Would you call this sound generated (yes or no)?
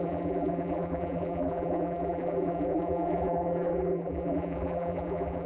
yes